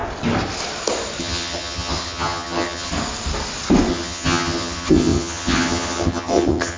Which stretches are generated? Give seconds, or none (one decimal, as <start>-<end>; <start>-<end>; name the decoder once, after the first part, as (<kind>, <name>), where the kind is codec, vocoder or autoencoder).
1.2-2.9 (vocoder, HiFi-GAN); 3.9-6.8